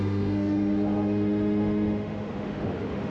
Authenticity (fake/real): fake